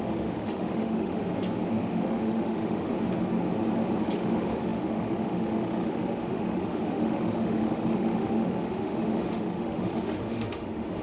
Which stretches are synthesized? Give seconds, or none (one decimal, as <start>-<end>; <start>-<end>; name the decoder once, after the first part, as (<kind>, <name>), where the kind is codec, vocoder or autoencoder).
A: 0.0-1.2 (autoencoder, DAC-VAE); 1.8-2.9; 4.0-11.0